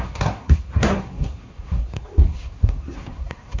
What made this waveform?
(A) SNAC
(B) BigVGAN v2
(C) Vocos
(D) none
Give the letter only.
A